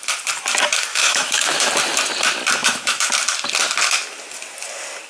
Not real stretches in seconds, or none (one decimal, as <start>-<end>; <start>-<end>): 0.9-1.7; 2.6-3.1